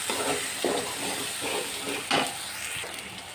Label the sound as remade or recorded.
recorded